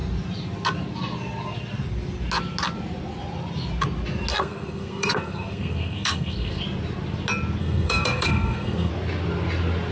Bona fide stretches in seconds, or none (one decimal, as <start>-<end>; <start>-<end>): 0.0-4.3; 6.6-7.6; 8.9-9.9